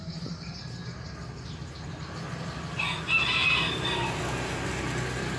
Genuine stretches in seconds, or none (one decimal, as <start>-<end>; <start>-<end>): 0.0-5.4